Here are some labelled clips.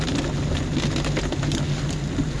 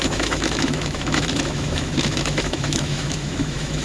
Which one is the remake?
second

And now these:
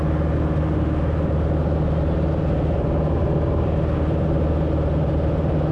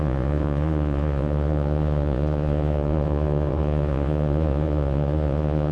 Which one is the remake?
second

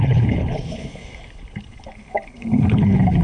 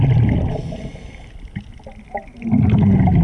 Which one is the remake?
first